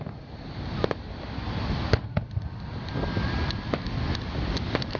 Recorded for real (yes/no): yes